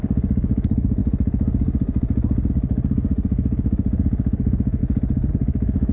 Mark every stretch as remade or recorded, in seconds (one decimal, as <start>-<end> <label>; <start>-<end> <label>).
0.0-1.0 remade; 1.0-2.5 recorded; 2.5-4.8 remade; 4.8-5.3 recorded; 5.3-5.9 remade